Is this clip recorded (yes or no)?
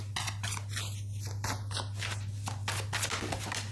yes